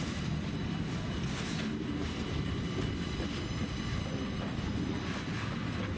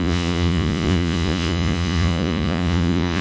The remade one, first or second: second